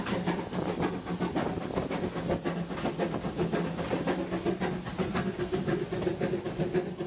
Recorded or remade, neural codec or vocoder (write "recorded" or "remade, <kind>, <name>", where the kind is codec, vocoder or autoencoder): recorded